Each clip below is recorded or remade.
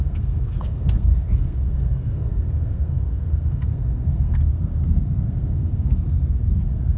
remade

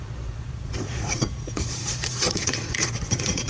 remade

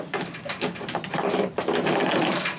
recorded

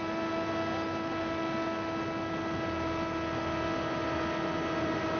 recorded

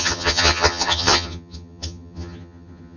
remade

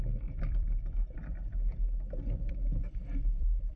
remade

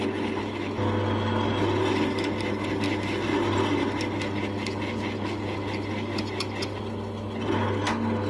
recorded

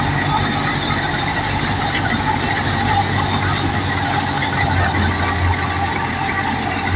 recorded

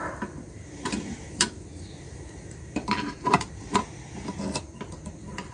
remade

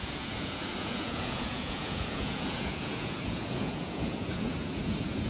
remade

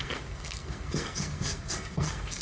remade